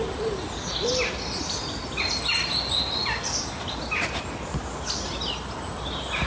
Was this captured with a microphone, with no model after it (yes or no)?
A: yes